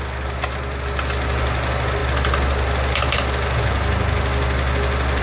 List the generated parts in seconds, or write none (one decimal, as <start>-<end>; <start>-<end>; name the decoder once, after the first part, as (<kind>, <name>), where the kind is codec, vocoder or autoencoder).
none